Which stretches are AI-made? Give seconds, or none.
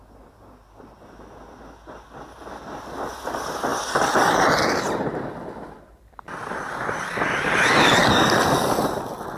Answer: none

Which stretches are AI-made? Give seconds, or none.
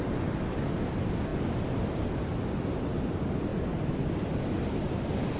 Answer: none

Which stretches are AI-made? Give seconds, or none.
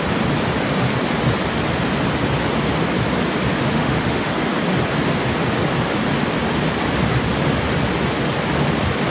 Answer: 3.5-4.3 (autoencoder, DAC-VAE)